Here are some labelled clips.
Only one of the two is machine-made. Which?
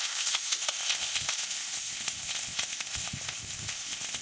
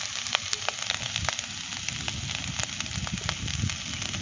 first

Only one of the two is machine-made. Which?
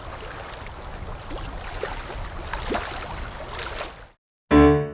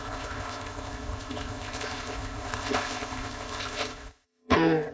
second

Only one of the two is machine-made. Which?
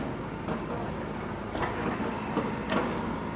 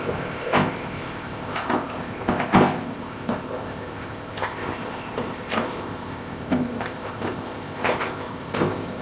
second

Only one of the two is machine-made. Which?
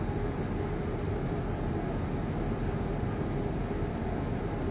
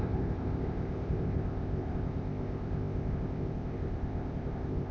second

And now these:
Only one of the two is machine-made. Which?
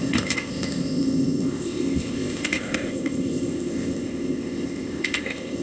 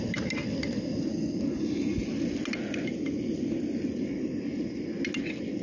first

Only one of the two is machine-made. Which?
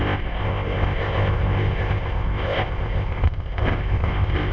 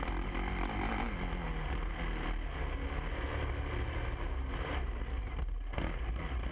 first